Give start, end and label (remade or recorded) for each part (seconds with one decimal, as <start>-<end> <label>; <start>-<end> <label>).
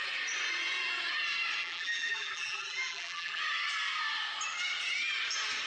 0.0-1.6 recorded; 1.6-3.4 remade; 3.4-5.7 recorded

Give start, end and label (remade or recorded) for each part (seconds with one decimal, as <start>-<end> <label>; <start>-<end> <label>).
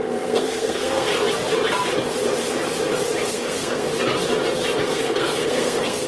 0.0-1.1 remade; 1.1-3.3 recorded; 3.3-3.9 remade; 3.9-4.8 recorded; 4.8-6.1 remade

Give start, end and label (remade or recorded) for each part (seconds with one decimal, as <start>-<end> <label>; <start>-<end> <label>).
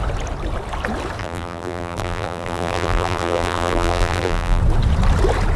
0.0-1.2 recorded; 1.2-4.6 remade; 4.6-5.6 recorded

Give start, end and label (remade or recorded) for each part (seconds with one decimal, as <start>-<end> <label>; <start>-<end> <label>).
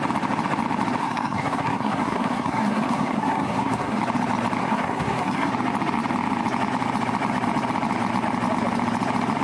0.0-1.0 recorded; 1.0-4.0 remade; 4.0-4.6 recorded; 4.6-5.5 remade; 5.5-9.4 recorded